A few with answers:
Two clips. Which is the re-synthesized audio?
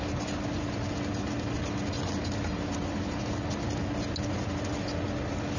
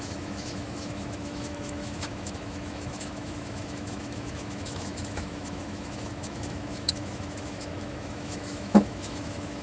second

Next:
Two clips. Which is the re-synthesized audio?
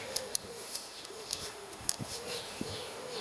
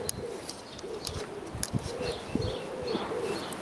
first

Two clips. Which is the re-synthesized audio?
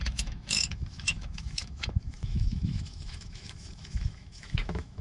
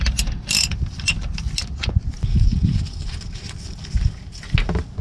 first